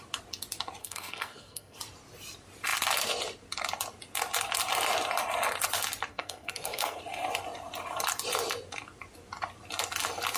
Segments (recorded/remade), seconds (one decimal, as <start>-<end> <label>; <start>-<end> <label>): 0.0-0.8 recorded; 0.8-1.8 remade; 1.8-6.1 recorded; 6.1-7.0 remade; 7.0-10.4 recorded